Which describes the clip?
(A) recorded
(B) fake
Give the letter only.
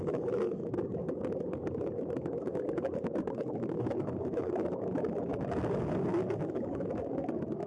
B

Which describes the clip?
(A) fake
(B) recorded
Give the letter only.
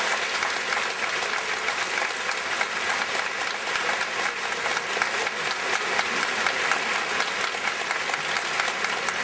B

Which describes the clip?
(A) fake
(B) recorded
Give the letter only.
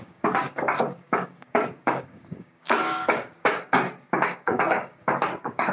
A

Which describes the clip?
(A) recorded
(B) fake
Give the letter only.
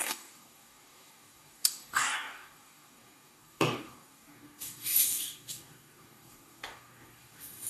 B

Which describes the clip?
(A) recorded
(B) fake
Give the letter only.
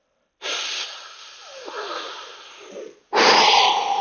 A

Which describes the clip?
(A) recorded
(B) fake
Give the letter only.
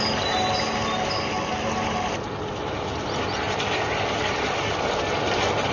A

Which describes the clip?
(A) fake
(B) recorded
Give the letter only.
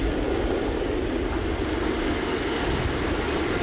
B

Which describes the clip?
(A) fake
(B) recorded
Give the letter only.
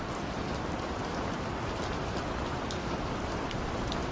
B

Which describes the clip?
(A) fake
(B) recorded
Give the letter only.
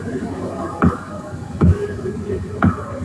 A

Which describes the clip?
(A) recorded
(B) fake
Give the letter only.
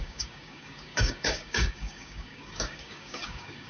B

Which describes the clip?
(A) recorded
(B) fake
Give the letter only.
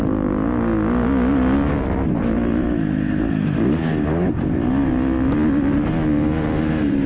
A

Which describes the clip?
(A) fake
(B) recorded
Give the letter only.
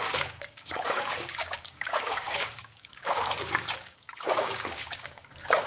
A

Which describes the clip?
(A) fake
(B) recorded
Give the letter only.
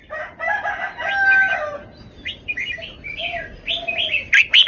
B